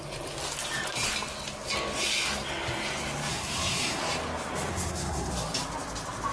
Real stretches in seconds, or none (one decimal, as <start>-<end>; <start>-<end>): 0.0-3.3; 4.0-4.7; 5.3-6.3